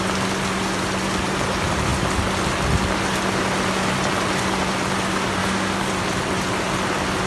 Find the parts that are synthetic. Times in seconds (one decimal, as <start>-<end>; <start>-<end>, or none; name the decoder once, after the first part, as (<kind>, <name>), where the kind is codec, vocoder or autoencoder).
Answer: 5.4-5.9 (codec, DAC)